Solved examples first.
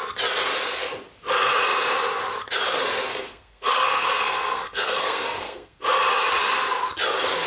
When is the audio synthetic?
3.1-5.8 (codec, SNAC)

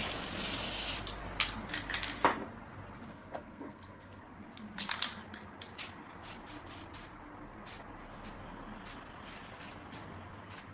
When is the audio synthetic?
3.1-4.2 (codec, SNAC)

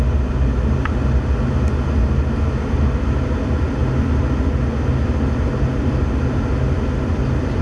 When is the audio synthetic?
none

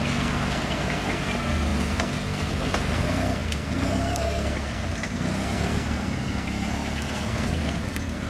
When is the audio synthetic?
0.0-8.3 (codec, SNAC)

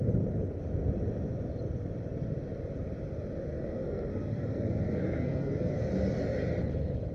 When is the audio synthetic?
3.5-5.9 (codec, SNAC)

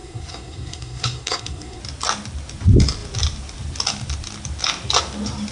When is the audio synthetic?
0.0-1.8 (codec, SNAC)

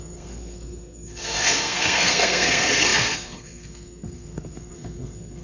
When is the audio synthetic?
0.0-5.4 (codec, SNAC)